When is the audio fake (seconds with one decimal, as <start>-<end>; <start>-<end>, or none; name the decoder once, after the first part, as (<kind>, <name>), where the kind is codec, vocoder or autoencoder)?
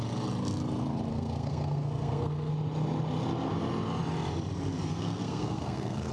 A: 1.1-2.5 (codec, SNAC); 4.8-6.1